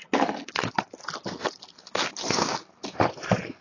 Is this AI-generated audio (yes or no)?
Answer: no